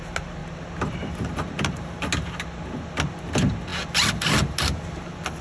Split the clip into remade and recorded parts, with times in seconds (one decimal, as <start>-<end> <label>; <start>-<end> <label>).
0.0-5.4 recorded